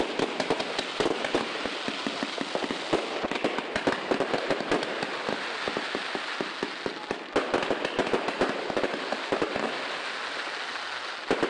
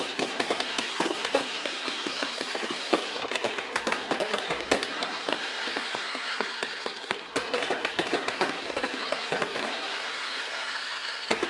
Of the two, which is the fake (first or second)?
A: second